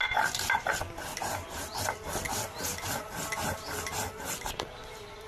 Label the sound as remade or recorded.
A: recorded